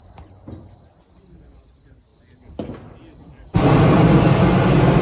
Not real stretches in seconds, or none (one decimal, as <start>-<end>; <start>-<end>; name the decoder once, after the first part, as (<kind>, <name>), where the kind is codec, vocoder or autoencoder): none